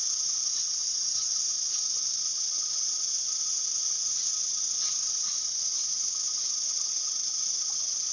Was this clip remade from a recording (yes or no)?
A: no